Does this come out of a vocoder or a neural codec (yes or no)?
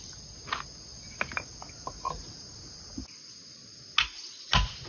no